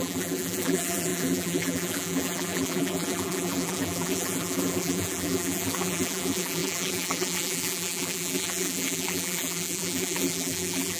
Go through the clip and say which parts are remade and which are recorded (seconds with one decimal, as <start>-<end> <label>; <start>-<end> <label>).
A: 0.0-11.0 remade